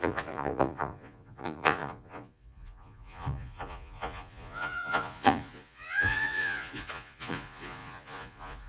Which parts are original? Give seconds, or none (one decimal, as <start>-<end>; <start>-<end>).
none